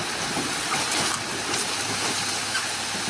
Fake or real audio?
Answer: real